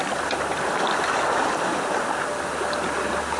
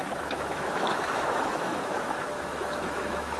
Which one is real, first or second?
first